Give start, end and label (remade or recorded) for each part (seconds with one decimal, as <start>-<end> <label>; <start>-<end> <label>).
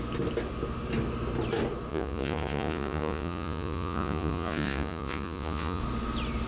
0.0-1.9 recorded; 1.9-5.8 remade; 5.8-6.5 recorded